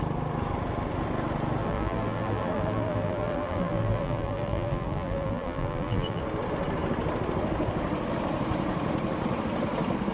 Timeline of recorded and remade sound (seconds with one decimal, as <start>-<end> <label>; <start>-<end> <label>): 0.0-1.6 recorded; 1.6-6.2 remade; 6.2-10.1 recorded